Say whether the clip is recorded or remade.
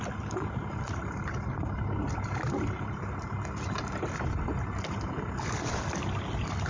recorded